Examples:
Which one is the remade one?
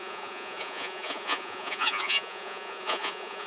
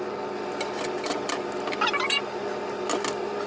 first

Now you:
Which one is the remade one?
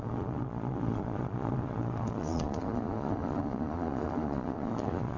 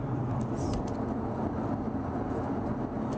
first